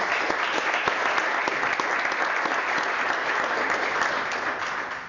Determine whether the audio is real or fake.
real